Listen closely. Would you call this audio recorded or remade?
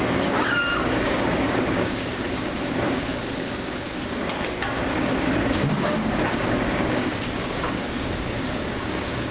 remade